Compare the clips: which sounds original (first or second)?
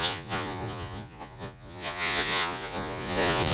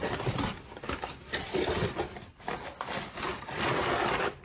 second